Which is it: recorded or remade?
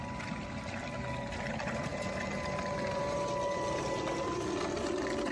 recorded